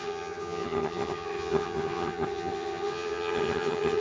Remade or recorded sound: remade